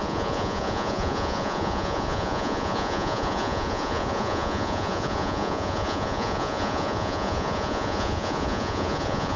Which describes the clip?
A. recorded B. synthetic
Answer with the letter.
B